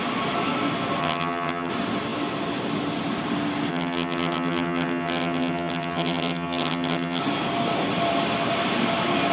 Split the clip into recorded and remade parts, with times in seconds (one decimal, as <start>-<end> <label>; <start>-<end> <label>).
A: 0.0-1.0 recorded; 1.0-1.7 remade; 1.7-3.7 recorded; 3.7-7.2 remade; 7.2-9.3 recorded

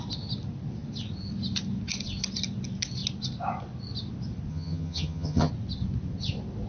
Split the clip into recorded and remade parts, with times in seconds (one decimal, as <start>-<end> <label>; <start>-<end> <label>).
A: 0.0-4.5 recorded; 4.5-5.5 remade; 5.5-6.7 recorded

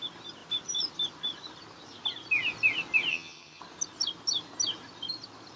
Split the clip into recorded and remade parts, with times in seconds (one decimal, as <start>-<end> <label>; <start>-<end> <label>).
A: 0.0-3.1 recorded; 3.1-3.6 remade; 3.6-5.6 recorded

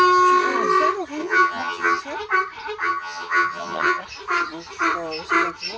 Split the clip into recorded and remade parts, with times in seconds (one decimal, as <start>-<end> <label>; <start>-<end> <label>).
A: 0.0-1.2 recorded; 1.2-2.0 remade; 2.0-2.8 recorded; 2.8-4.0 remade; 4.0-5.8 recorded

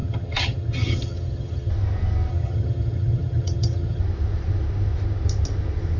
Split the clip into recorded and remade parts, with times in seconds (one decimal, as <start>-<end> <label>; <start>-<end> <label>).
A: 0.0-1.7 remade; 1.7-2.3 recorded; 2.3-4.0 remade; 4.0-6.0 recorded

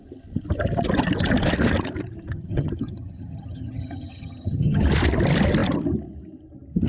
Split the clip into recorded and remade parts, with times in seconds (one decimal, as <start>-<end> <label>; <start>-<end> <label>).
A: 0.0-2.3 recorded; 2.3-4.8 remade; 4.8-6.9 recorded

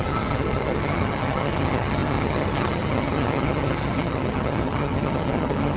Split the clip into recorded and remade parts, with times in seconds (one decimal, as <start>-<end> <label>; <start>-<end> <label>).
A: 0.0-5.8 remade